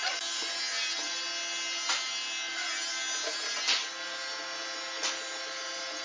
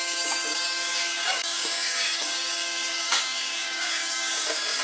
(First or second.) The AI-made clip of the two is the second